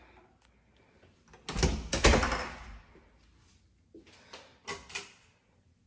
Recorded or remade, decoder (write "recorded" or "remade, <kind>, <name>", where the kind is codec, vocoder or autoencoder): recorded